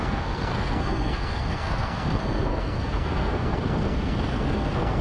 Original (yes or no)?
no